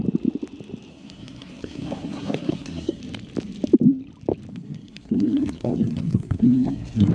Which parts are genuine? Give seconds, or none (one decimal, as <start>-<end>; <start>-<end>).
0.0-0.9; 3.0-4.5